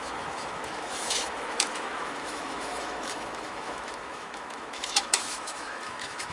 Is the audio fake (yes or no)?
yes